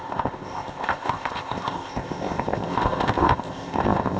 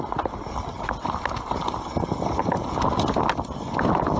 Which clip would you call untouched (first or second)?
second